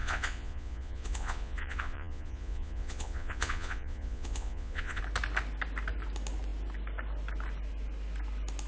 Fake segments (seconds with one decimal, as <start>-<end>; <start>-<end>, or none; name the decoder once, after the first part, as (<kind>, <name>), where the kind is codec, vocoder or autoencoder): 0.0-5.0 (vocoder, Vocos)